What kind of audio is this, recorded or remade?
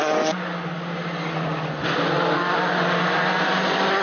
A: recorded